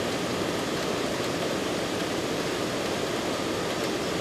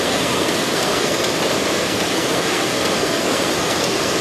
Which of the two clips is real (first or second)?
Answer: first